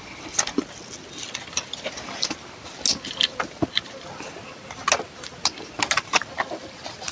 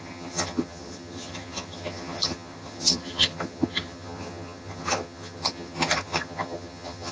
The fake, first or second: second